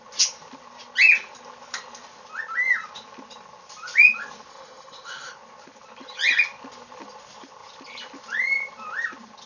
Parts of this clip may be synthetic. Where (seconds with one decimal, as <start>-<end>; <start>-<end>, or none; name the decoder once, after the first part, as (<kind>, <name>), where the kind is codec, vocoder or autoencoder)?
4.5-5.3 (autoencoder, DAC-VAE)

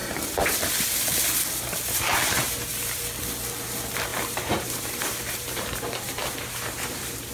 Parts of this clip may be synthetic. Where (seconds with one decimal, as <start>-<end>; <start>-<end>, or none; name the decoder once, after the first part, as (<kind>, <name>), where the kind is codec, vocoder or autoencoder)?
0.0-0.6 (vocoder, BigVGAN v2); 2.4-3.0; 4.1-7.3

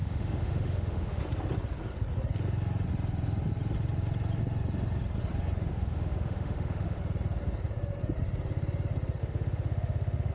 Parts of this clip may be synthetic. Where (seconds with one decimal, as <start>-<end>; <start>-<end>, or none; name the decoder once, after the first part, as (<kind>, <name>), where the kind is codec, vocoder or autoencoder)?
0.0-1.2 (autoencoder, DAC-VAE); 5.7-7.0; 9.2-10.3

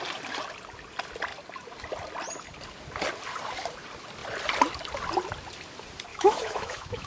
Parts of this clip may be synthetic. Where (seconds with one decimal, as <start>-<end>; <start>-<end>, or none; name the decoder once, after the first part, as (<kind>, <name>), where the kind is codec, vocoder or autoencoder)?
6.1-7.1 (autoencoder, DAC-VAE)

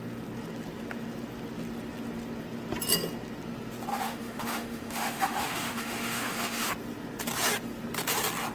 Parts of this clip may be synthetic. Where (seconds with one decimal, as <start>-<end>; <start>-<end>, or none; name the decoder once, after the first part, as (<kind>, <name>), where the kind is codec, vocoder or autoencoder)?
3.9-6.7 (autoencoder, DAC-VAE)